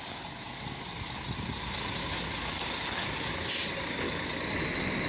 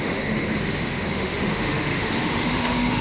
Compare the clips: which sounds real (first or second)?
first